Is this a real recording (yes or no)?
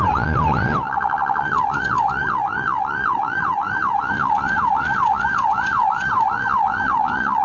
no